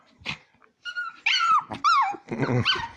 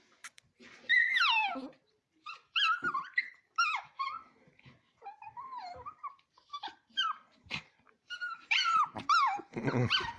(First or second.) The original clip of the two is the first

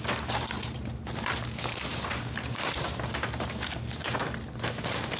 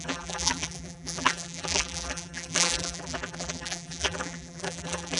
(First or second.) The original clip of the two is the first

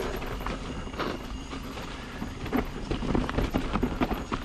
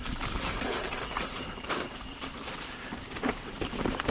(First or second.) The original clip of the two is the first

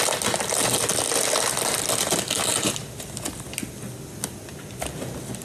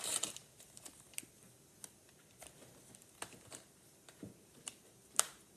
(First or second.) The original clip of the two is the first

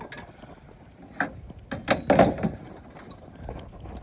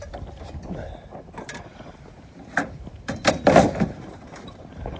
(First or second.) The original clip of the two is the first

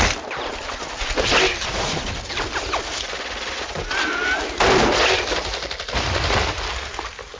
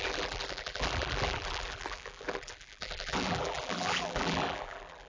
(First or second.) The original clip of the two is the first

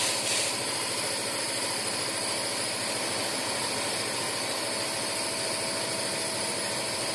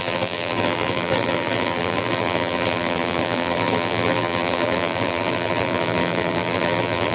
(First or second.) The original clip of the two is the first